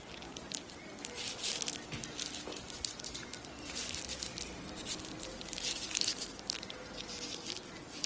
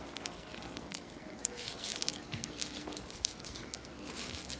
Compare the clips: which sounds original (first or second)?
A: first